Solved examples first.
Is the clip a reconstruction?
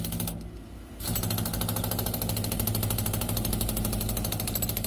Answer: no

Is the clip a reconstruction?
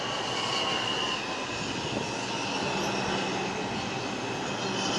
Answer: no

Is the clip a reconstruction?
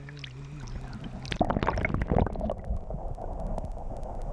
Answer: no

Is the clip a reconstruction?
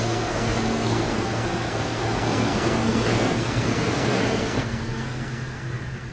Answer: yes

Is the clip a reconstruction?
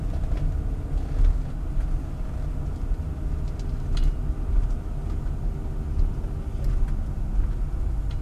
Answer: no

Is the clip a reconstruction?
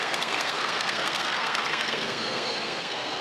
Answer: yes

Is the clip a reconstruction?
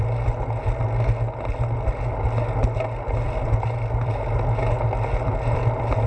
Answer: no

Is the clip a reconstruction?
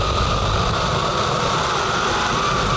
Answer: no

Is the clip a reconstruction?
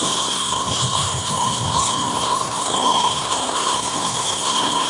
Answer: yes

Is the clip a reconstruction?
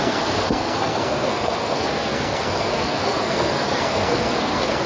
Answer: yes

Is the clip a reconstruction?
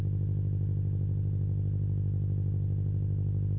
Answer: no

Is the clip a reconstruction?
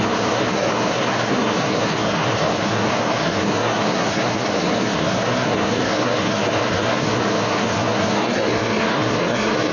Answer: yes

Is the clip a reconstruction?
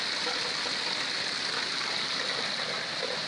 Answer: no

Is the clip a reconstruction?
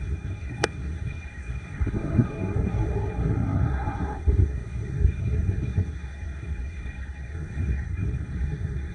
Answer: yes